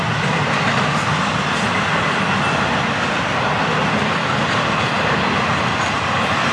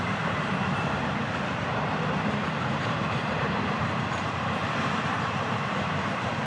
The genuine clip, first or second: first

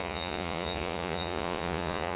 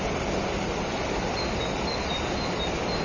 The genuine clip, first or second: second